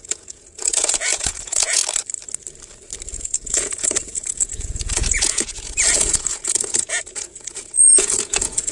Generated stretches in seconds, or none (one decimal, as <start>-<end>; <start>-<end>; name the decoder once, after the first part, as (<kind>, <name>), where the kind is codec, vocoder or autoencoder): 0.0-1.8 (vocoder, Vocos); 3.1-8.7